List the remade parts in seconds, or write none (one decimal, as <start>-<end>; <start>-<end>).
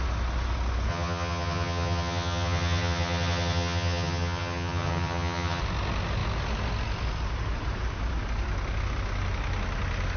0.9-5.6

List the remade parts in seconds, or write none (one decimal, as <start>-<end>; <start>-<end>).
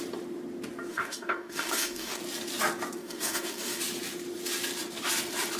0.9-2.2; 3.0-3.8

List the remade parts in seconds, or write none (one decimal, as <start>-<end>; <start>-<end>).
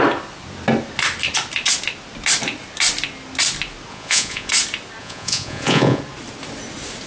3.9-4.5; 5.0-6.0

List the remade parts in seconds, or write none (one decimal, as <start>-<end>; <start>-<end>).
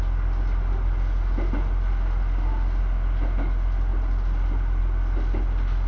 none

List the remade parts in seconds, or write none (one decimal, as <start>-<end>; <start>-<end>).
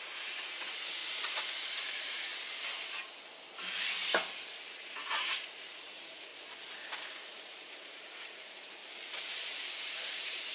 0.0-2.3; 4.7-6.3; 6.9-8.8; 9.5-10.5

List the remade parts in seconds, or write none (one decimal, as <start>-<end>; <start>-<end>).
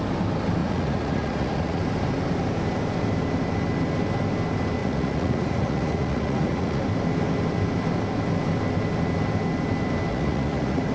0.6-1.8; 4.8-6.8; 10.1-10.9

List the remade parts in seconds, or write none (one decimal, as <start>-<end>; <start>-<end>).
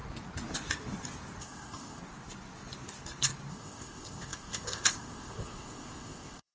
1.4-2.0; 3.5-6.5